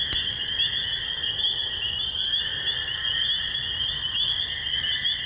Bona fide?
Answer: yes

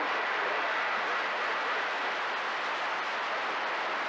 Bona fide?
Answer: yes